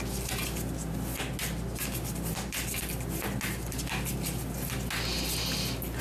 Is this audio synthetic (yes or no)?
no